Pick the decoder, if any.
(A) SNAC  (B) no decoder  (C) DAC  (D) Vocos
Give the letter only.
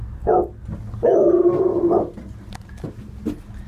B